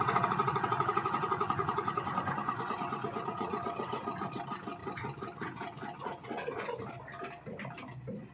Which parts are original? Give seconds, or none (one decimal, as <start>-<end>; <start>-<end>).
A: 0.0-0.4; 4.3-4.8; 6.9-8.3